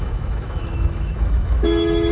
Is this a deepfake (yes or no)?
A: yes